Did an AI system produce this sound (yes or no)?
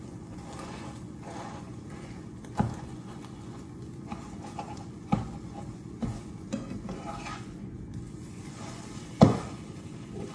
yes